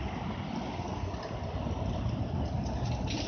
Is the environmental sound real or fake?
real